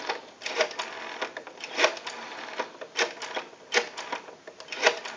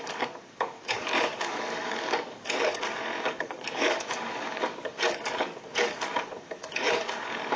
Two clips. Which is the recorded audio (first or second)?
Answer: first